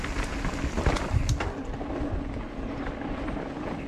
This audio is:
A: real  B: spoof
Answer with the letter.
A